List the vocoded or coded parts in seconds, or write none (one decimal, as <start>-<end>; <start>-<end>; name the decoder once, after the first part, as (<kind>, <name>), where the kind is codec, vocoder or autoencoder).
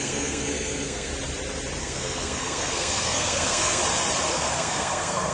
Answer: 0.0-1.1 (codec, SNAC); 1.8-3.8; 4.3-5.3